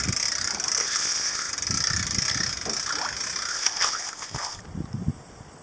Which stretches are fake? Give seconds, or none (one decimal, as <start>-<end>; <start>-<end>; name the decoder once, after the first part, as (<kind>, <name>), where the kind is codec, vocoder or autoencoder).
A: 0.8-1.5 (codec, ZipCodec); 3.5-4.6